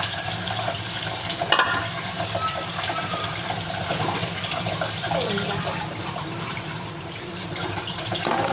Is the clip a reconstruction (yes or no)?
yes